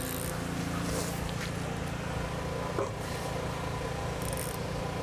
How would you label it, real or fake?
real